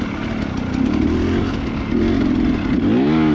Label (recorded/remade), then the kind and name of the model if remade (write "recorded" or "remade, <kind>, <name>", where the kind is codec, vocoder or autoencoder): recorded